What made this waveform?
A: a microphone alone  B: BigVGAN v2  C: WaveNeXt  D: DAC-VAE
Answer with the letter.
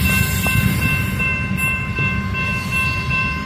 B